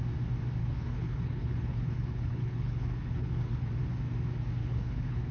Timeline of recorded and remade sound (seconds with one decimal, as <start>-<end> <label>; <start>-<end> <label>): 0.0-0.6 recorded; 0.6-3.7 remade; 3.7-4.6 recorded; 4.6-5.3 remade